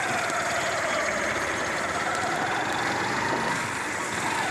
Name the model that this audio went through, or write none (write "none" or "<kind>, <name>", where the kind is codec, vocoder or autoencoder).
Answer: none